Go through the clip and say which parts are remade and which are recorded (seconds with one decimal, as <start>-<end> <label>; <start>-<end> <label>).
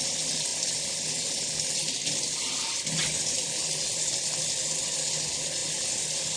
0.0-5.6 recorded; 5.6-6.4 remade